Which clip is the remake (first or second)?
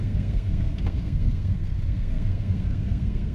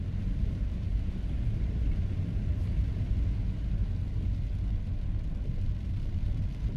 first